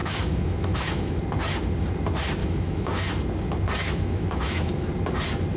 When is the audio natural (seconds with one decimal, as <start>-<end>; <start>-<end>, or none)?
1.2-2.4; 2.9-3.8; 4.9-5.6